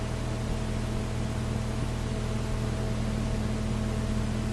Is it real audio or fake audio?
real